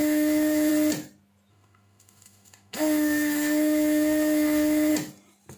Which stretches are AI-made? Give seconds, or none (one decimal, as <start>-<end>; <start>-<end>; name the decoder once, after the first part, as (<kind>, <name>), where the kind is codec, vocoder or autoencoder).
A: 0.0-0.7 (autoencoder, DAC-VAE); 1.5-4.9